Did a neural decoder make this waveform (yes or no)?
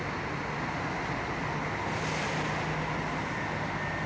no